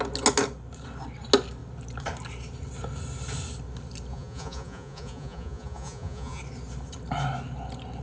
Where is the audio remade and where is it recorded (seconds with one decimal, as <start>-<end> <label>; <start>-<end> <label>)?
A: 0.0-4.1 recorded; 4.1-6.4 remade; 6.4-8.0 recorded